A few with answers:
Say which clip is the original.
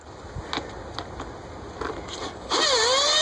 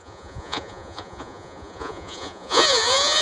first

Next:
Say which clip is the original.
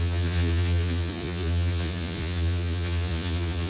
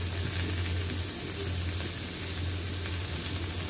second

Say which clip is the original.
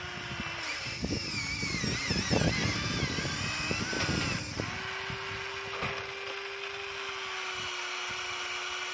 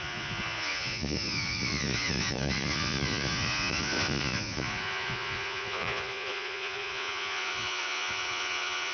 first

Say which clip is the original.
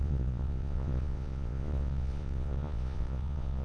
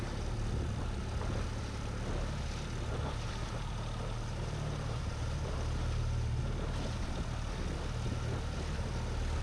second